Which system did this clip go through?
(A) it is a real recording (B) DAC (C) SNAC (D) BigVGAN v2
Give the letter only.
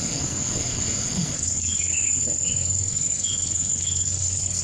C